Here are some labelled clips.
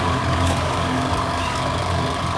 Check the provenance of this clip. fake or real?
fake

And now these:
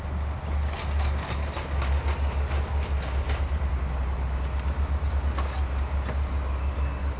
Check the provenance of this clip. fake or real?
real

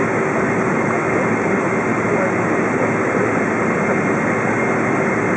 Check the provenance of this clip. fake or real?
real